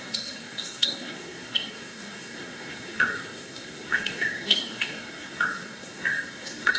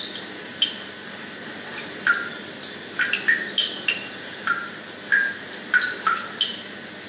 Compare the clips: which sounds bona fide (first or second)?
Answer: second